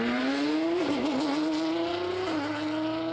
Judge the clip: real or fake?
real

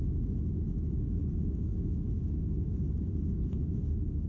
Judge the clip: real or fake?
fake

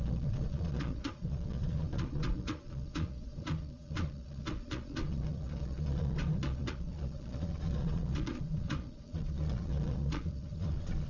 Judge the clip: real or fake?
fake